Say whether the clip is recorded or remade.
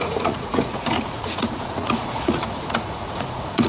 remade